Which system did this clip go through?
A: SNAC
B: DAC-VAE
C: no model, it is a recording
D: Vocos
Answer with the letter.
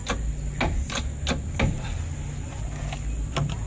C